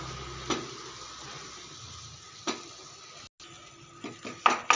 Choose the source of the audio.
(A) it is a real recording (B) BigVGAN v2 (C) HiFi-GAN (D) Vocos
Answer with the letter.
A